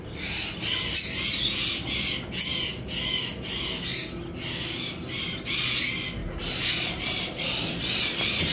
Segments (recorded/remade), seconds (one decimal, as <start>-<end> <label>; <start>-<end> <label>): 0.0-6.2 recorded; 6.2-7.8 remade; 7.8-8.5 recorded